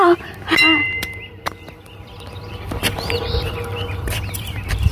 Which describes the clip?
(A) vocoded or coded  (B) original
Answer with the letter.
A